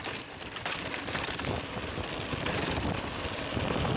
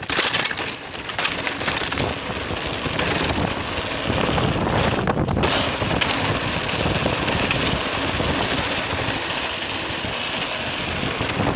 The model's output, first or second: first